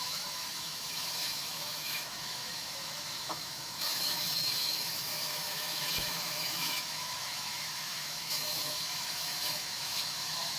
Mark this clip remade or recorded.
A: remade